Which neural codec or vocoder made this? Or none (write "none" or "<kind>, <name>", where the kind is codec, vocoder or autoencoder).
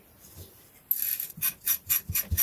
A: none